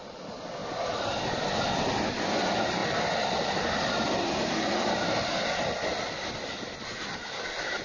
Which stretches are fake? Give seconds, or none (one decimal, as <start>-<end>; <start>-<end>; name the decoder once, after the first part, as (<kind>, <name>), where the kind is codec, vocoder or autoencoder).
none